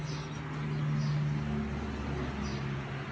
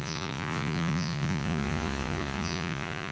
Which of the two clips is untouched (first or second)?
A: first